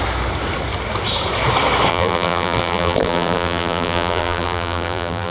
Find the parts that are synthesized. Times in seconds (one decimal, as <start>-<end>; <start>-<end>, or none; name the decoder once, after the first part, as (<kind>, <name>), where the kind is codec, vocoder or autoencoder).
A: 1.9-5.3 (vocoder, BigVGAN v2)

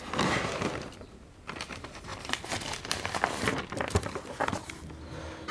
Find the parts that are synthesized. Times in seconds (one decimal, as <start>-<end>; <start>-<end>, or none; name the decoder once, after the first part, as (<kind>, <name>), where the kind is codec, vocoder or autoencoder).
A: 2.1-4.4 (vocoder, BigVGAN v2)

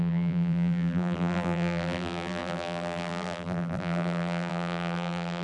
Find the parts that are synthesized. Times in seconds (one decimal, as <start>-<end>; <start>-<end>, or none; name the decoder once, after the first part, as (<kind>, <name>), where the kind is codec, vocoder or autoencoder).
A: 0.0-5.4 (vocoder, BigVGAN v2)